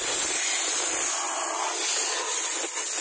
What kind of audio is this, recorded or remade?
recorded